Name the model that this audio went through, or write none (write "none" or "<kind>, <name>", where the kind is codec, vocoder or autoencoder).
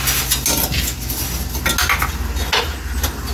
none